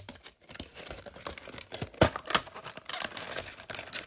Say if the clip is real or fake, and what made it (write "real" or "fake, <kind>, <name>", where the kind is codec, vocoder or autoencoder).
real